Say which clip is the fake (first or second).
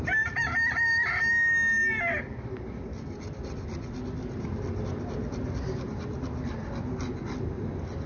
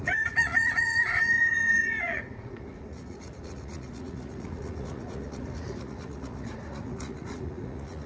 second